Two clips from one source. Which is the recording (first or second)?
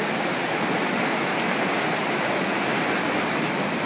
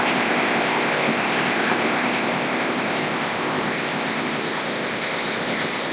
first